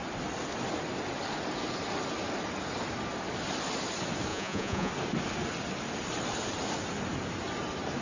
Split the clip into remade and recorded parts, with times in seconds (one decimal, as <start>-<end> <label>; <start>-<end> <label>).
0.0-4.3 recorded; 4.3-4.9 remade; 4.9-8.0 recorded